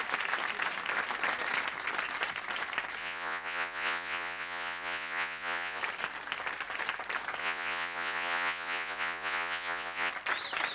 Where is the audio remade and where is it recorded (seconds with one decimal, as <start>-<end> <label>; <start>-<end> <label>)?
0.0-3.0 recorded; 3.0-5.8 remade; 5.8-7.4 recorded; 7.4-10.1 remade; 10.1-10.7 recorded